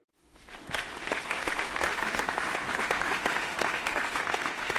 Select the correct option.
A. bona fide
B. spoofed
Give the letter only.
B